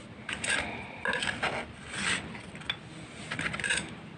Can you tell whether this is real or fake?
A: real